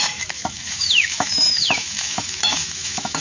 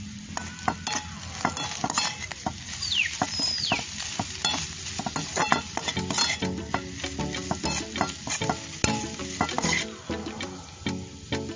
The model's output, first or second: first